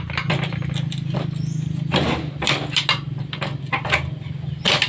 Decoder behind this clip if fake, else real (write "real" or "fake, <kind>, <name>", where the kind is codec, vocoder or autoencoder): real